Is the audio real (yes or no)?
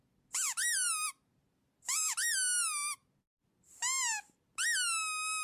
yes